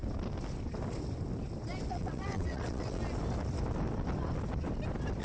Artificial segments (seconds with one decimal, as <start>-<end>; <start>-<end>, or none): 1.9-3.0